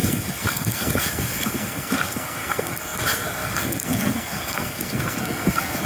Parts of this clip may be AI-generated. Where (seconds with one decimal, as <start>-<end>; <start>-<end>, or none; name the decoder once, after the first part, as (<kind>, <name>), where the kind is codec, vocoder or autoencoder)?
0.0-5.9 (codec, SNAC)